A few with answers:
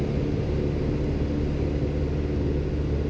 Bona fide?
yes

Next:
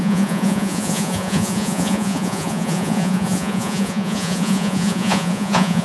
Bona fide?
no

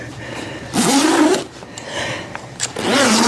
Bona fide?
yes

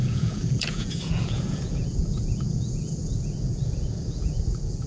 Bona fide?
no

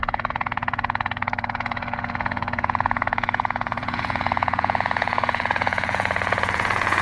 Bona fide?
no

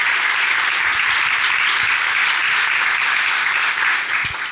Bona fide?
yes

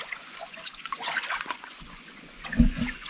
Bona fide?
no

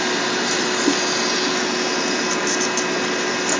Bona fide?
yes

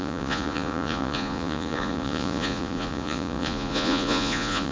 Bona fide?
no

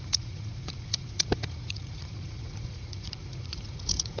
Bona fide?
no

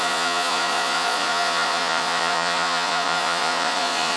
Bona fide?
no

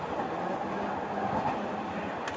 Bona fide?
yes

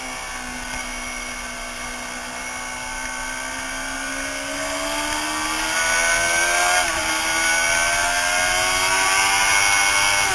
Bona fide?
yes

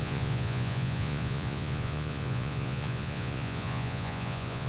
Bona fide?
no